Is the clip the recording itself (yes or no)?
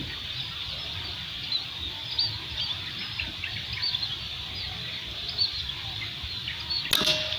yes